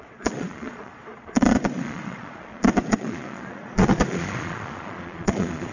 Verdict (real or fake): fake